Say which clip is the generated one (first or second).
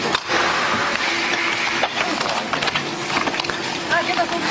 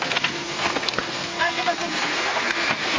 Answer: second